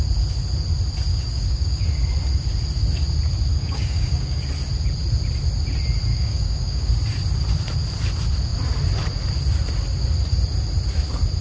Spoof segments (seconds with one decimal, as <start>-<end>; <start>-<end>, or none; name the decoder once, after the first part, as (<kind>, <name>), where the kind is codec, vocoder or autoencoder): 1.1-1.8 (codec, DAC); 3.5-4.4; 6.1-6.9